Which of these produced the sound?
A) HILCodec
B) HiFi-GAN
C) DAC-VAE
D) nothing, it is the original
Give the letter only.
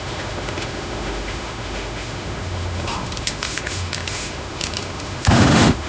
C